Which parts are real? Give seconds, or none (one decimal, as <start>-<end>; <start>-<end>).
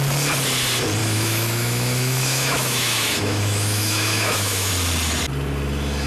0.0-1.0; 4.7-6.1